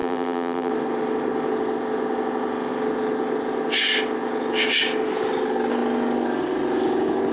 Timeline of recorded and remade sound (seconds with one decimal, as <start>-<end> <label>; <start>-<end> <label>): 0.0-0.7 remade; 0.7-7.3 recorded